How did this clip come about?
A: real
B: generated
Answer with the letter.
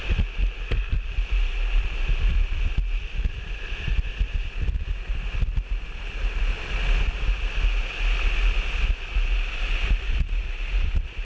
A